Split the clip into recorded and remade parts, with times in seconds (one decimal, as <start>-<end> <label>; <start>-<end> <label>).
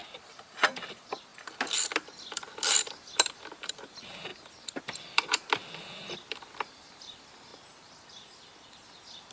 0.0-7.5 remade; 7.5-8.1 recorded; 8.1-9.3 remade